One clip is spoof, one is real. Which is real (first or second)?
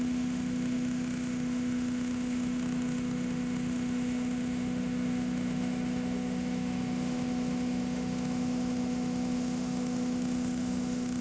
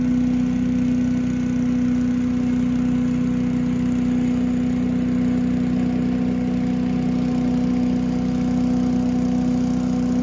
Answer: second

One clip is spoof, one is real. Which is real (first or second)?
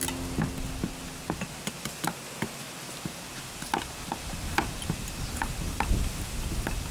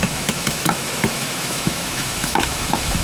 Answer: first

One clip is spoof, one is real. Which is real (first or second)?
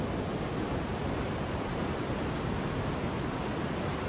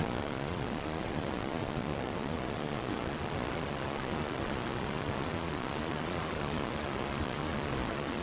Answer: first